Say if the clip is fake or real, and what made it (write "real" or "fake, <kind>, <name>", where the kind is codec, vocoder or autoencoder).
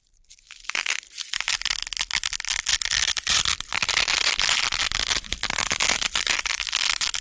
fake, vocoder, BigVGAN v2